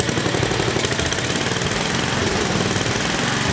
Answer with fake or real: real